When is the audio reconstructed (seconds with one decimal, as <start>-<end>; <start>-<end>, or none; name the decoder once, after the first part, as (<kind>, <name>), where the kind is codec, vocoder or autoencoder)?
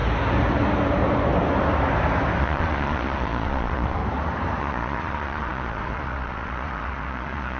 2.4-4.0 (vocoder, Vocos); 4.6-7.6